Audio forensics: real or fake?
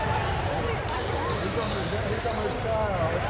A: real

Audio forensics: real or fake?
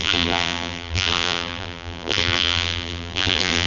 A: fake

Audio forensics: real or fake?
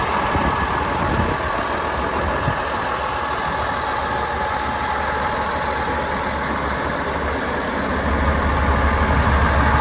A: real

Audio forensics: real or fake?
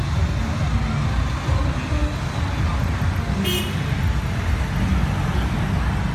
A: real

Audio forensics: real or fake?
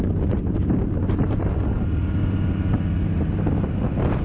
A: real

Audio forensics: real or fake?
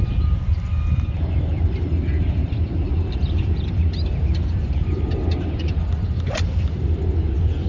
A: fake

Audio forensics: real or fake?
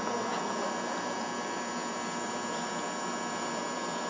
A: fake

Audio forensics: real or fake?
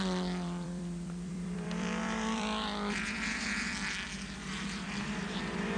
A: fake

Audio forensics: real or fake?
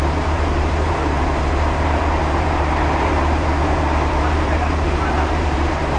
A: fake